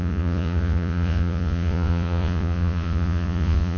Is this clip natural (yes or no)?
no